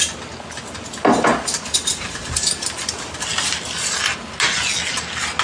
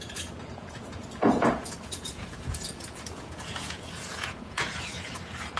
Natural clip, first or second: first